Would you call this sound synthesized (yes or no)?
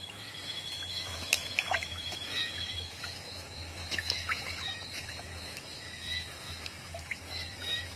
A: yes